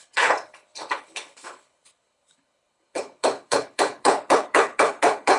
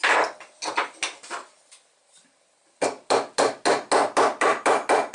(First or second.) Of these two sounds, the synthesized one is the first